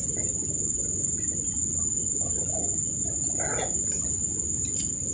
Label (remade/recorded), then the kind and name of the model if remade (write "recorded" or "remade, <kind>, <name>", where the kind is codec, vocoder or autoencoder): recorded